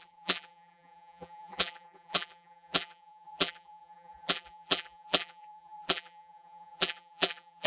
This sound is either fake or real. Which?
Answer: fake